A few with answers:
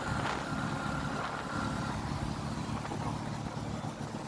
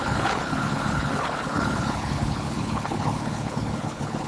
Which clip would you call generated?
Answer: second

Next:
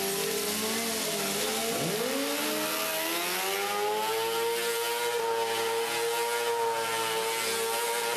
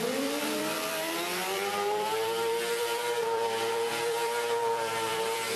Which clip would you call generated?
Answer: second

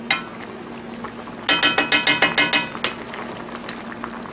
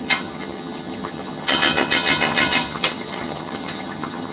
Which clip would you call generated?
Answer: second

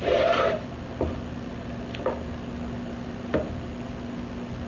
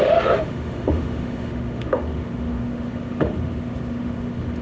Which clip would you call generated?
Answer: second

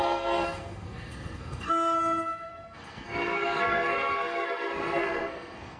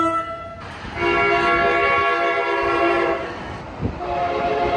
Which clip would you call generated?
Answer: first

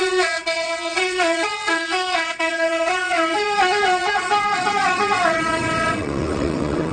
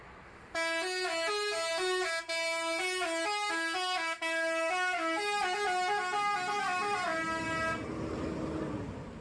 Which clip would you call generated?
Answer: first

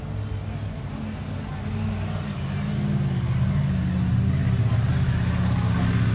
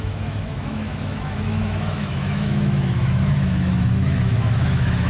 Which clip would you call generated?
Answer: second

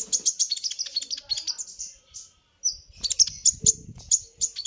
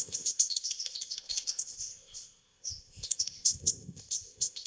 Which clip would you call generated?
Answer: second